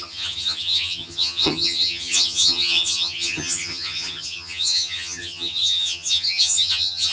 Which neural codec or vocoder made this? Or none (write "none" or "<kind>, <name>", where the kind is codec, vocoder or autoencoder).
vocoder, HiFi-GAN